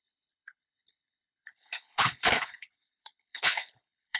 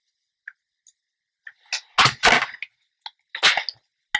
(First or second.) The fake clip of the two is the first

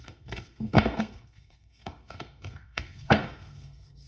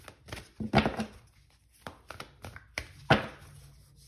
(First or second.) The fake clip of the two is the first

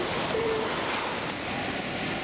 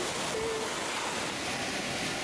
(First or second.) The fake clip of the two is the first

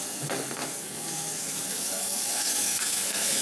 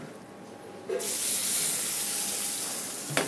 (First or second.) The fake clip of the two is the first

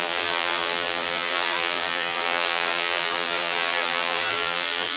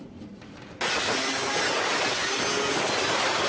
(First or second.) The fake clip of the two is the first